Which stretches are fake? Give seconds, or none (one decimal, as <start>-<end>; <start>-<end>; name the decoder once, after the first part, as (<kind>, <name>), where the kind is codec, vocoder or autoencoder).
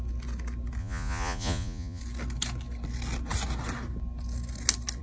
0.8-2.0 (vocoder, Vocos)